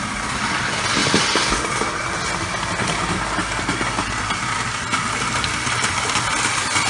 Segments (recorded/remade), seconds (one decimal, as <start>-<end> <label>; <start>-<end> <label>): 0.0-6.9 recorded